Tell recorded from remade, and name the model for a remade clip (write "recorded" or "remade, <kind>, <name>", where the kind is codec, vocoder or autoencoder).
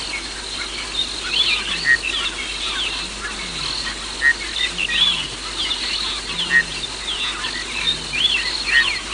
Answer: recorded